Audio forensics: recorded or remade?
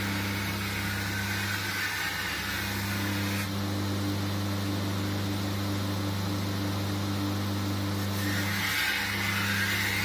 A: recorded